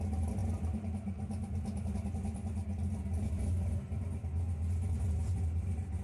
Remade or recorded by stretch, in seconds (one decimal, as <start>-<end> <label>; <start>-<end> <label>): 0.0-6.0 recorded